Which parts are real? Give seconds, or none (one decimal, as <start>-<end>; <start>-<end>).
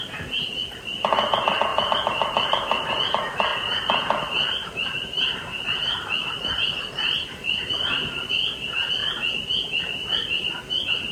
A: 0.0-1.7; 2.9-3.5; 8.3-11.1